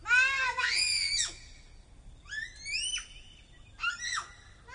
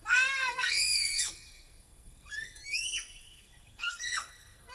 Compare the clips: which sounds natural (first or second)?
first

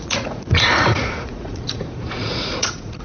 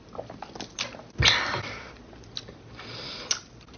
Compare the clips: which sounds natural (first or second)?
second